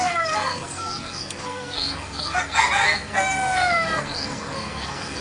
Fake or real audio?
fake